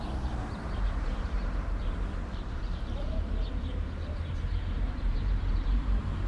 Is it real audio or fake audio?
fake